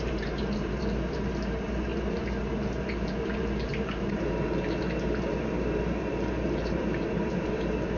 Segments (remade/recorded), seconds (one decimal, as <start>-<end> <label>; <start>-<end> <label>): 0.0-8.0 remade